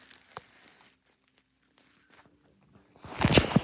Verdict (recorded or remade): recorded